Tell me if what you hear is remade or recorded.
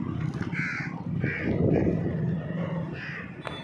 recorded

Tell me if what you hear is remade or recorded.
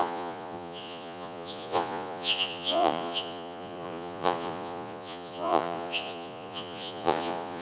remade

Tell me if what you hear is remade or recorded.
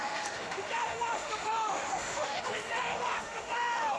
remade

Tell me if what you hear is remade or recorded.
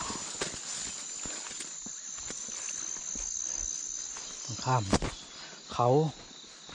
recorded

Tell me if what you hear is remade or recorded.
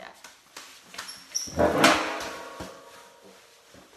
recorded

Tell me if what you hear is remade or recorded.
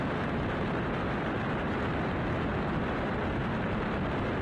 remade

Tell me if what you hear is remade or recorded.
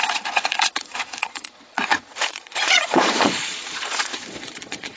remade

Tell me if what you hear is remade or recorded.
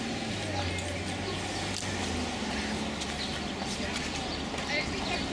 recorded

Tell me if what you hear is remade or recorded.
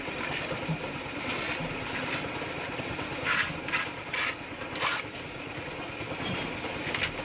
recorded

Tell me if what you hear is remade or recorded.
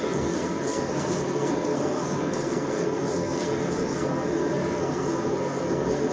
remade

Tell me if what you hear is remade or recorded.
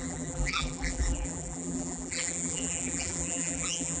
remade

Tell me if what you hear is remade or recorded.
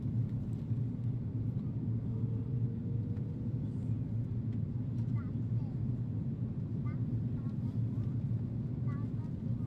recorded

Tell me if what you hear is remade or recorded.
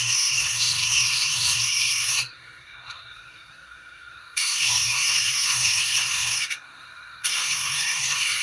remade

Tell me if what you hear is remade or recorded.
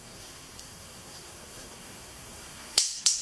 remade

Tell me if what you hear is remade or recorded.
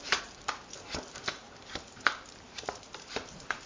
remade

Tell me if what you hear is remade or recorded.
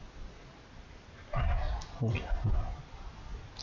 recorded